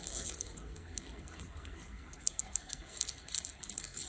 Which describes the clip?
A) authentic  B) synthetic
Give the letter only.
B